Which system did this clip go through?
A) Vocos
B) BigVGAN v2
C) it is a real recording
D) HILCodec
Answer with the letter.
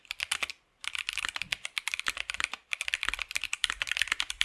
B